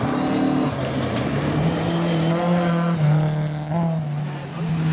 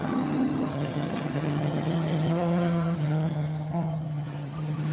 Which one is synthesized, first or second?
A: second